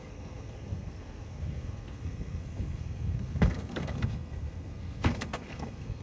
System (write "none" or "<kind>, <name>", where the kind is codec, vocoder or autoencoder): codec, SNAC